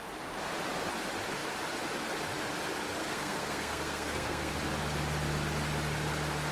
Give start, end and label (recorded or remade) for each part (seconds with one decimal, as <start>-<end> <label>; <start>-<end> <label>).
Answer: 0.0-3.0 recorded; 3.0-4.5 remade; 4.5-6.5 recorded

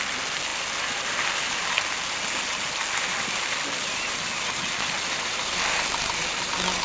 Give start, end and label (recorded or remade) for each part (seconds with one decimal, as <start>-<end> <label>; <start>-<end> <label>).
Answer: 0.0-6.8 recorded